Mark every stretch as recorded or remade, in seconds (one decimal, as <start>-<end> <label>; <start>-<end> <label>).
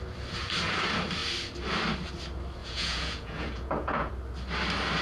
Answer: 0.0-2.6 recorded; 2.6-4.1 remade; 4.1-5.0 recorded